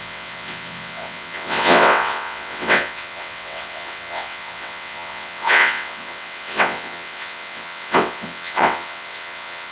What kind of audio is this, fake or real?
fake